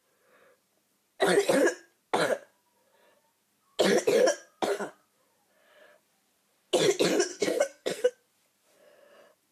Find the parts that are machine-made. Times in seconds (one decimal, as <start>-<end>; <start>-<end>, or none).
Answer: 7.3-8.1